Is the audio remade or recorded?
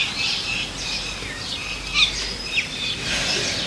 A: recorded